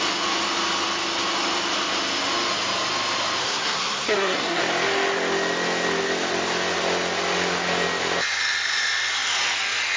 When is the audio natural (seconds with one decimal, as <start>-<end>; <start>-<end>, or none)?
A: 0.0-3.4; 4.6-10.0